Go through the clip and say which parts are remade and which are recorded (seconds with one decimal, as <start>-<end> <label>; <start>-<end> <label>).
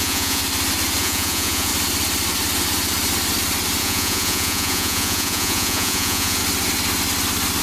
0.0-0.4 remade; 0.4-1.0 recorded; 1.0-1.7 remade; 1.7-3.8 recorded; 3.8-6.4 remade; 6.4-7.6 recorded